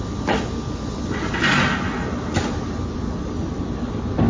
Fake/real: real